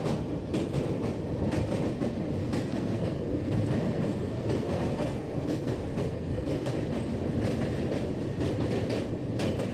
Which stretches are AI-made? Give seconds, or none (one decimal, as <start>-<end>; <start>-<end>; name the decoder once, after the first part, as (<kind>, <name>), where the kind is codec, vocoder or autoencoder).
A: 2.4-6.7 (codec, SNAC)